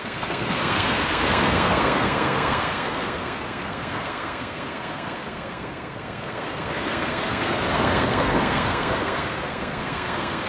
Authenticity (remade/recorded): remade